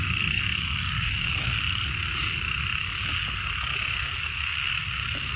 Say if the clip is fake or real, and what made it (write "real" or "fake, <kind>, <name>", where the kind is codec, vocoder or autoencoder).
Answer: real